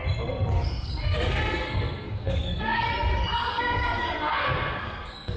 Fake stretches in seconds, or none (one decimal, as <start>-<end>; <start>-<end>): 0.6-2.9; 3.4-5.4